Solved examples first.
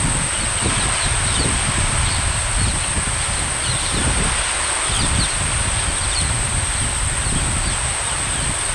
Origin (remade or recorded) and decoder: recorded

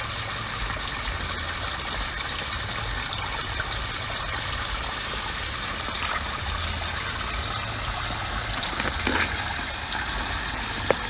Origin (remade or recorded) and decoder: recorded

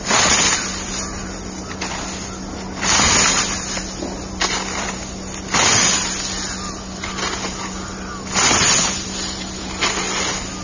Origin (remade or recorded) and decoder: recorded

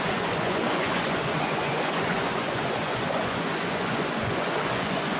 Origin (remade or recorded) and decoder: remade, vocoder, Vocos